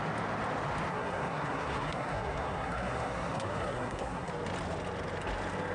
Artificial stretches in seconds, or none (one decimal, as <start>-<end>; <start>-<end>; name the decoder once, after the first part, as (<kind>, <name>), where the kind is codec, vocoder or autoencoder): 0.9-4.3 (codec, SNAC)